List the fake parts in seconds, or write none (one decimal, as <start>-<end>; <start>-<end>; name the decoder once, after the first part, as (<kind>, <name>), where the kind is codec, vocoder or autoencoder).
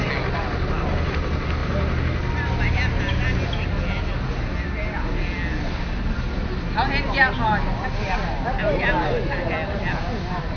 none